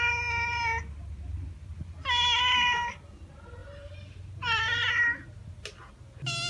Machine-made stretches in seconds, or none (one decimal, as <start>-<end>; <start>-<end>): none